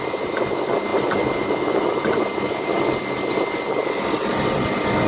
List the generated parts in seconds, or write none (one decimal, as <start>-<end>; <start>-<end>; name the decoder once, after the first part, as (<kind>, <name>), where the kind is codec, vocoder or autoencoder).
none